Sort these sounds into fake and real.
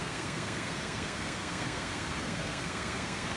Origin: fake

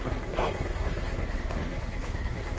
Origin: fake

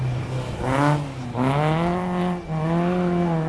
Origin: real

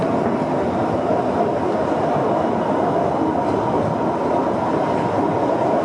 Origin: real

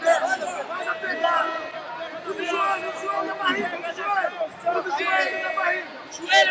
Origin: real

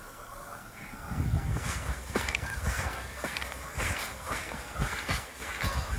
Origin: fake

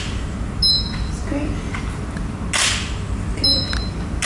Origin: real